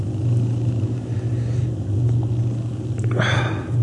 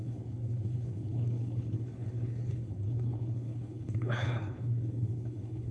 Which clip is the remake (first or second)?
second